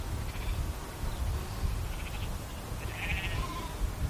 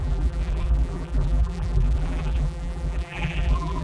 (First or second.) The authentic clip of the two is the first